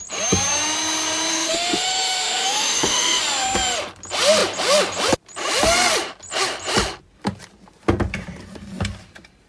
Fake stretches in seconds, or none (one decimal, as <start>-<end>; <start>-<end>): 1.3-3.2